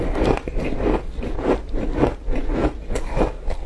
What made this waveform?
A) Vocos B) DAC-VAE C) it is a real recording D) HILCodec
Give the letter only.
C